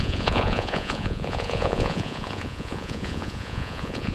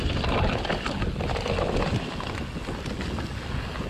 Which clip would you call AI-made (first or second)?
first